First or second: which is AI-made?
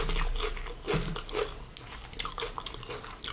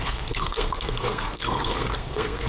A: second